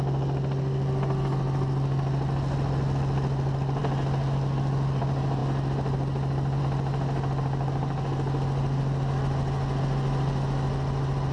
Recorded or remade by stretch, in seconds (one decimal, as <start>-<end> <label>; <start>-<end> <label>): 0.0-11.3 recorded

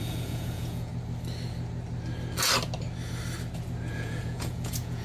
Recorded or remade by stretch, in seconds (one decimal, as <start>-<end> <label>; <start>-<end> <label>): 0.0-0.9 remade; 0.9-3.9 recorded; 3.9-5.0 remade

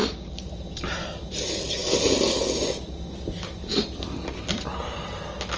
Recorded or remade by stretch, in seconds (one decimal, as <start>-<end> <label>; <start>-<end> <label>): 0.0-5.6 recorded

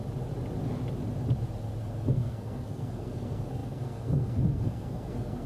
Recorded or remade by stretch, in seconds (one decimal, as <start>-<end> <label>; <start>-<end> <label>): 0.0-1.8 recorded; 1.8-5.5 remade

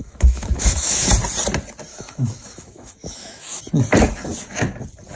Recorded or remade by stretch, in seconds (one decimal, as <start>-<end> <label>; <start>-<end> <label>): 0.0-1.1 remade; 1.1-1.9 recorded; 1.9-3.6 remade; 3.6-5.2 recorded

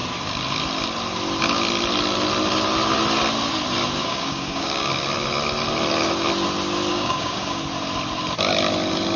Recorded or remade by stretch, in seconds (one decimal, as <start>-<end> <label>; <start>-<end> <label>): 0.0-4.0 recorded; 4.0-4.9 remade; 4.9-6.9 recorded; 6.9-7.6 remade; 7.6-9.2 recorded